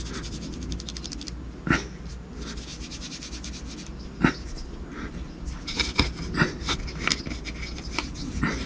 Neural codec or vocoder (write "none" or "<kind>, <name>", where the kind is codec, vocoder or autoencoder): none